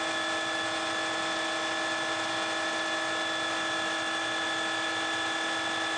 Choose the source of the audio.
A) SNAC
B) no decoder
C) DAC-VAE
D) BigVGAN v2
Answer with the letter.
B